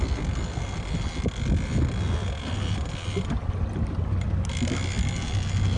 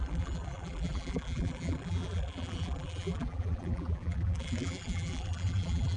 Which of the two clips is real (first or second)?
first